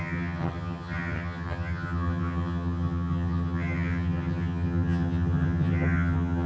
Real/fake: fake